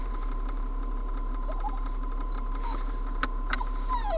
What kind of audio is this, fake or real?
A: fake